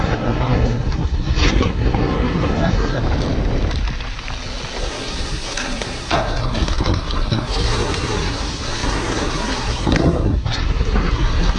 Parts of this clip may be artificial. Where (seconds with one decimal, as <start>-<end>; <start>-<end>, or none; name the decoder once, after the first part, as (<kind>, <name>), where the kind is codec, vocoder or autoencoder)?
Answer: 0.0-3.0 (codec, SNAC); 4.8-11.6